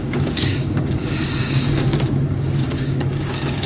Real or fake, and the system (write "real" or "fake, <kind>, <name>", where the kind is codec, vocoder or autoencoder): fake, codec, DAC